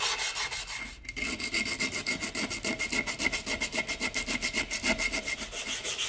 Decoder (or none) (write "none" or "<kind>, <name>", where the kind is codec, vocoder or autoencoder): none